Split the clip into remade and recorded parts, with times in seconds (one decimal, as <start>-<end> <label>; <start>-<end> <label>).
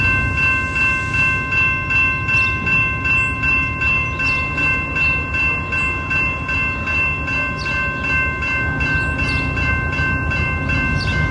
0.0-11.3 recorded